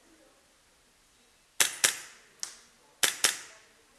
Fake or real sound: real